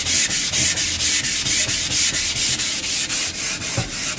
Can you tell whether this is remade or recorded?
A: recorded